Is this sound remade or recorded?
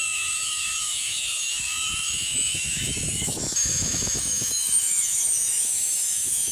remade